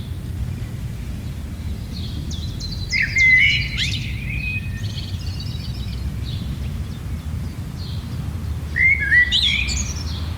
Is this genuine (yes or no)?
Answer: yes